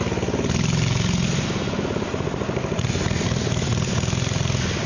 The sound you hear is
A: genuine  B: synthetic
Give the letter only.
A